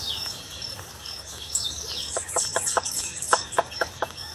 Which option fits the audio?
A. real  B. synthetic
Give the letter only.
B